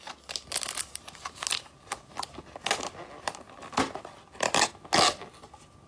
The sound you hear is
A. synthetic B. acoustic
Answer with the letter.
B